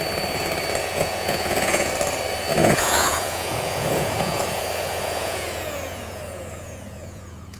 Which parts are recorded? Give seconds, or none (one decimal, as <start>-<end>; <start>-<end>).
0.0-0.8; 1.9-2.6